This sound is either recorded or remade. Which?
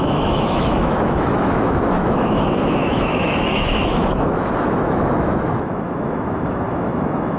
remade